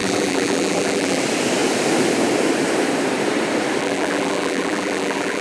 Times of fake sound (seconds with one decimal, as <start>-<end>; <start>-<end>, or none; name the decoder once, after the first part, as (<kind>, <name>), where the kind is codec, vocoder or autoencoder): 0.0-1.2 (vocoder, BigVGAN v2); 3.8-5.4